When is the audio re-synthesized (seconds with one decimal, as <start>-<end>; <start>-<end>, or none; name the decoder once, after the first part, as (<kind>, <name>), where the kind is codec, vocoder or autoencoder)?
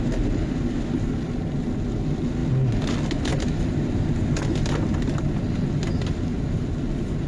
none